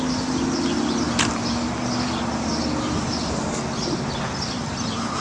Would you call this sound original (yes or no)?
yes